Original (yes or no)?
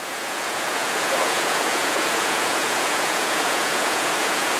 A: no